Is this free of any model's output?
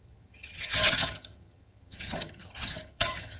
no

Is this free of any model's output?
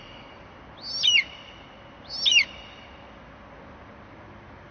yes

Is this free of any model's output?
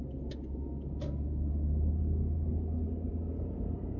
yes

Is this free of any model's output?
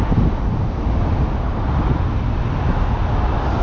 yes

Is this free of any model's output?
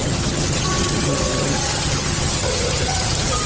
no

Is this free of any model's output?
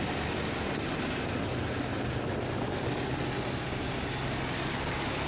yes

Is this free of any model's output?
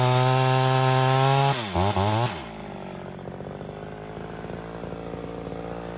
yes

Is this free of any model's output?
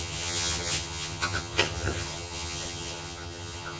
no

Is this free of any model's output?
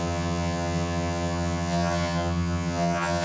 no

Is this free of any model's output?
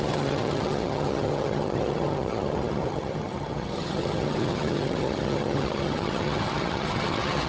no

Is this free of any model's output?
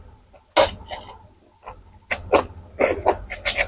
yes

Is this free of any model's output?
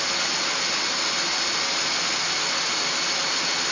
yes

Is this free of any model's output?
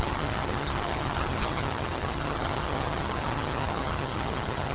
no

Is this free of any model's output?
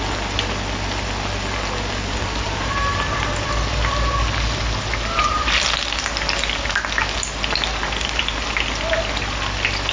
yes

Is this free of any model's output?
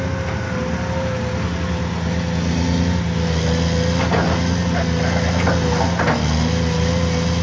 yes